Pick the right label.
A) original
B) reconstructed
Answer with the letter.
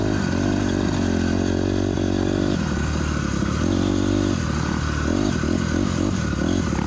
A